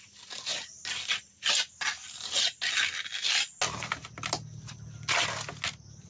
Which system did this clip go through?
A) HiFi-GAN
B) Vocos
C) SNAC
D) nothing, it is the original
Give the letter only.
D